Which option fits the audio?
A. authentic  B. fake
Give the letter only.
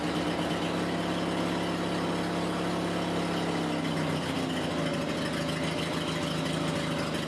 A